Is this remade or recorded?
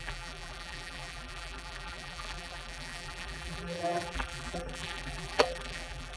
remade